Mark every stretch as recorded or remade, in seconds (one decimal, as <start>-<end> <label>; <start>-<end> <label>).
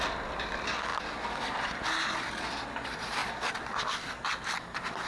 0.0-5.1 recorded